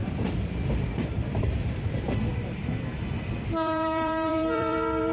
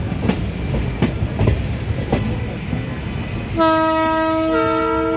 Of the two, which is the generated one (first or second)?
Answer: first